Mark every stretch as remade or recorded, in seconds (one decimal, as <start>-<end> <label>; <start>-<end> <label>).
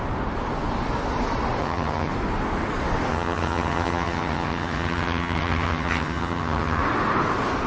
0.0-1.6 recorded; 1.6-2.1 remade; 2.1-3.1 recorded; 3.1-6.8 remade; 6.8-7.7 recorded